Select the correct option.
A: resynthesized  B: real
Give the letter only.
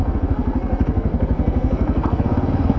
A